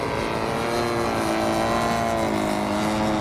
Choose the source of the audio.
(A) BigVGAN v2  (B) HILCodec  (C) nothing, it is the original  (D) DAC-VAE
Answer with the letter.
C